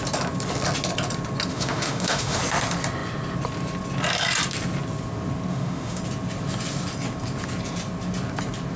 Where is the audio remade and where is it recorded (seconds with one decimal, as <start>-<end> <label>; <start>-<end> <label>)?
0.0-1.5 recorded; 1.5-2.4 remade; 2.4-5.5 recorded; 5.5-6.0 remade; 6.0-8.8 recorded

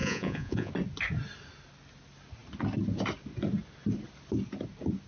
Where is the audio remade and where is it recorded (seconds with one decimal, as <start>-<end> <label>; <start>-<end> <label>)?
0.0-0.7 remade; 0.7-5.1 recorded

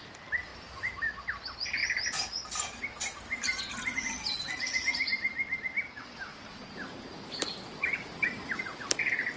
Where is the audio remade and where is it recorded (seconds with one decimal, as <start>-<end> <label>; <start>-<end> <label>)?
0.0-0.5 recorded; 0.5-1.0 remade; 1.0-6.3 recorded; 6.3-8.6 remade; 8.6-9.4 recorded

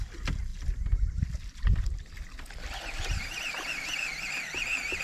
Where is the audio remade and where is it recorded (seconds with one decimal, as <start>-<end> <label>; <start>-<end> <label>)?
0.0-5.0 recorded

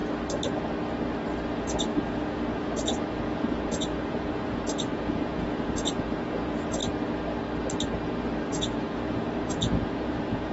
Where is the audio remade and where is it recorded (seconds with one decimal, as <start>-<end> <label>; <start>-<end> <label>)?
0.0-1.5 recorded; 1.5-6.8 remade; 6.8-8.5 recorded; 8.5-10.5 remade